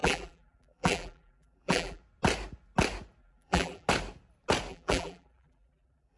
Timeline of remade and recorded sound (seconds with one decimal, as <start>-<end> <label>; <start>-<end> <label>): 0.0-2.0 remade; 2.0-3.2 recorded; 3.2-3.9 remade; 3.9-4.7 recorded; 4.7-6.2 remade